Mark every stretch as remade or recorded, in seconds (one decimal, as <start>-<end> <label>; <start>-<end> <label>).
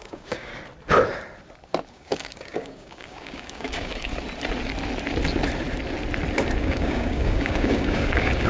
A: 0.0-0.5 remade; 0.5-1.9 recorded; 1.9-4.1 remade; 4.1-6.6 recorded; 6.6-8.5 remade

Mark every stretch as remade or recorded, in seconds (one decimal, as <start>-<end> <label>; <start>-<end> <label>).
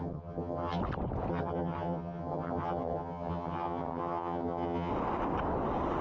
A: 0.0-0.8 remade; 0.8-1.3 recorded; 1.3-4.9 remade; 4.9-6.0 recorded